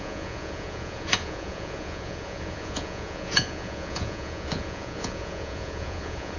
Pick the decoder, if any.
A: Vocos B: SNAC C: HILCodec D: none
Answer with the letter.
A